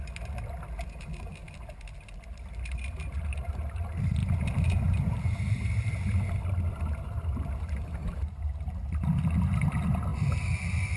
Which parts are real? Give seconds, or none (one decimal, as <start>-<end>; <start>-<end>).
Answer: 0.0-4.2; 7.4-11.0